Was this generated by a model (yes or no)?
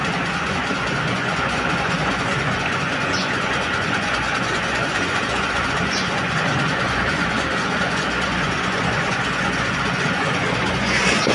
yes